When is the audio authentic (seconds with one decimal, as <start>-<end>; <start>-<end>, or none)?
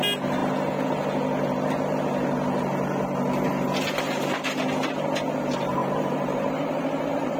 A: 0.0-5.8